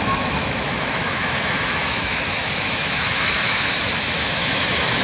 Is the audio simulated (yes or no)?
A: yes